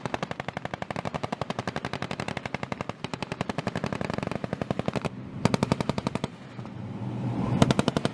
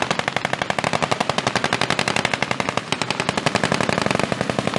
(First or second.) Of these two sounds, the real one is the second